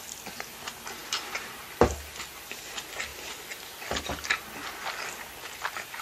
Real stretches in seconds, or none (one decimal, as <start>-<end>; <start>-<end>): 0.0-6.0